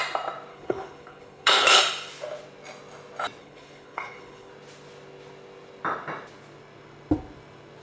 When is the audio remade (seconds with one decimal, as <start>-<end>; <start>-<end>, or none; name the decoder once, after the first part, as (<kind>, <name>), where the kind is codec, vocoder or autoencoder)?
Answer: 0.5-1.8 (codec, HILCodec); 3.4-4.5